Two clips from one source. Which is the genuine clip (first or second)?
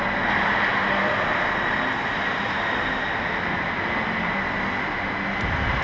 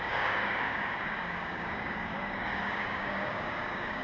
first